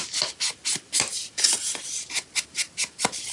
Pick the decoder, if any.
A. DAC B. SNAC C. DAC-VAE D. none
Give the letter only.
D